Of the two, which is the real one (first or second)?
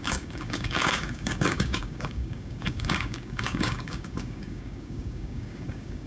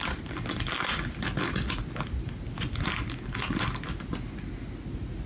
second